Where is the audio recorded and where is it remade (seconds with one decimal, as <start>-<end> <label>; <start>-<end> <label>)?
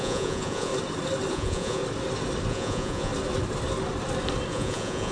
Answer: 0.0-0.7 remade; 0.7-1.3 recorded; 1.3-1.8 remade; 1.8-2.5 recorded; 2.5-3.1 remade; 3.1-4.5 recorded; 4.5-5.1 remade